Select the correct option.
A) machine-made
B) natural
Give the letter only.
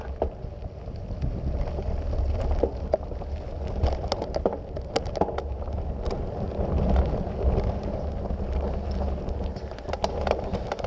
B